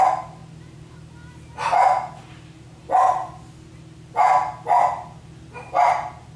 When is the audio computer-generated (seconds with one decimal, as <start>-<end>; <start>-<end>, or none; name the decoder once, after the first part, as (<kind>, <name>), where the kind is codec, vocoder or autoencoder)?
none